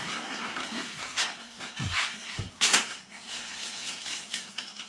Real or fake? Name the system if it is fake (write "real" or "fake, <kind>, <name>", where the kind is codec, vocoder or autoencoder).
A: fake, codec, SNAC